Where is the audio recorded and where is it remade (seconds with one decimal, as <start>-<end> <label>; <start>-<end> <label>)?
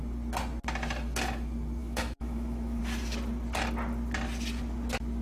0.0-1.8 recorded; 1.8-2.8 remade; 2.8-5.2 recorded